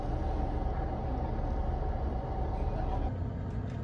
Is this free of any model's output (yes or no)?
yes